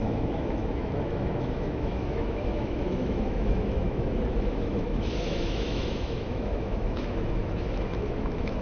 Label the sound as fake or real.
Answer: fake